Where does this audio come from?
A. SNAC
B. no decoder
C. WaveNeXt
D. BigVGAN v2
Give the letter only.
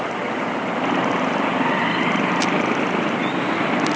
B